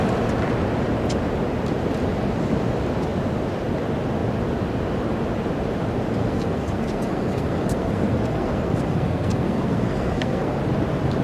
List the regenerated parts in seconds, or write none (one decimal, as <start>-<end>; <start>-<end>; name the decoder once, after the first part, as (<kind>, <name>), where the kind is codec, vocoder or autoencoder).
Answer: 6.2-10.6 (codec, SNAC)